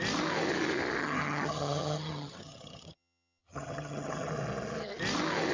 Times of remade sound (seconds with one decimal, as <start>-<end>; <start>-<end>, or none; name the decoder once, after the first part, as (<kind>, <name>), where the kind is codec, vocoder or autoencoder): 1.0-4.3 (vocoder, HiFi-GAN)